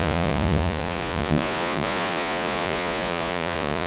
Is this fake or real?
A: fake